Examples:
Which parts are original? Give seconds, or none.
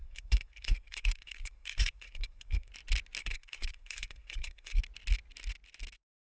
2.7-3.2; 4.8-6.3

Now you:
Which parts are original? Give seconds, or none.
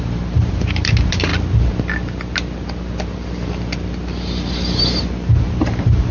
1.3-5.0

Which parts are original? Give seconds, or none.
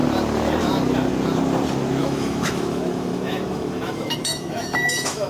0.0-2.0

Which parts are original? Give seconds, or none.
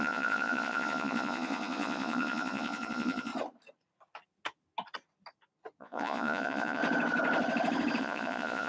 3.3-5.8; 6.8-8.0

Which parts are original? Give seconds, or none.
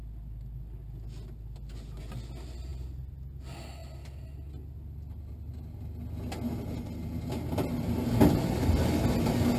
0.0-9.6